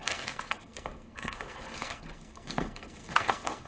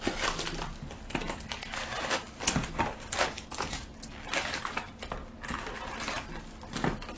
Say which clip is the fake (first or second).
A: first